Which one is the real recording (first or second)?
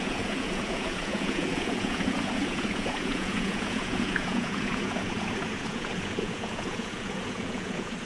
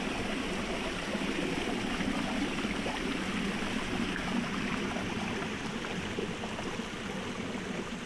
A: second